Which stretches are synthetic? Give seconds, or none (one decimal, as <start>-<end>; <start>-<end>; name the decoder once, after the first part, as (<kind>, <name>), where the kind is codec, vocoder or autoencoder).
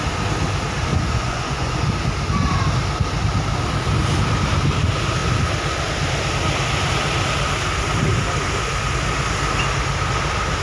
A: 0.9-1.9 (vocoder, Vocos)